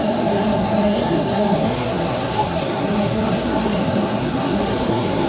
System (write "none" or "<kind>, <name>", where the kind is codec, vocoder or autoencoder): codec, SNAC